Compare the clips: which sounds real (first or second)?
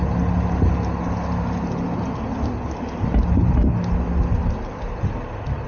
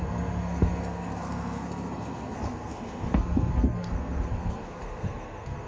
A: first